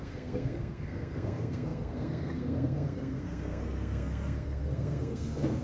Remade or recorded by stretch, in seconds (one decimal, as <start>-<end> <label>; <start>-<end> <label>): 0.0-5.6 remade